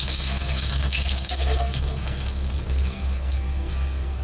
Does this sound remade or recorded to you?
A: remade